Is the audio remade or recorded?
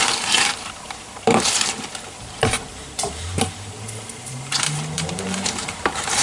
remade